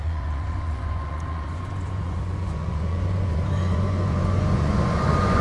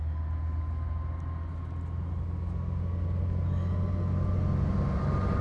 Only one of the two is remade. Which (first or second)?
first